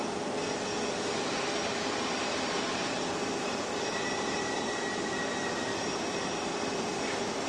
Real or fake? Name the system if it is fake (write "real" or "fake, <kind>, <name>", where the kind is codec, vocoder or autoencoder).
real